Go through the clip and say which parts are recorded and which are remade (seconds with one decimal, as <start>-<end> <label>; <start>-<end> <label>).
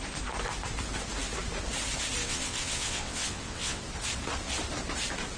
0.0-2.2 recorded; 2.2-3.8 remade; 3.8-5.4 recorded